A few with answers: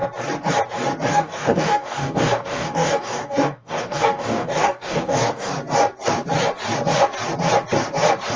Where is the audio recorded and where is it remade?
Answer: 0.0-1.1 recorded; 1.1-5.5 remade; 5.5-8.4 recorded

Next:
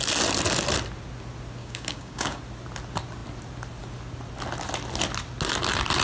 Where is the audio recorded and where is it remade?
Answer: 0.0-1.6 recorded; 1.6-2.4 remade; 2.4-6.0 recorded

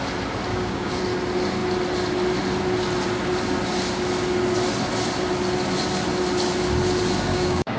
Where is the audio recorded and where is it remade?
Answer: 0.0-0.5 recorded; 0.5-1.0 remade; 1.0-7.3 recorded; 7.3-7.8 remade

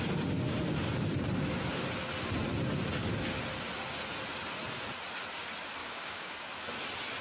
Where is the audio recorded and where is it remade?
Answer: 0.0-5.8 recorded; 5.8-6.3 remade; 6.3-7.2 recorded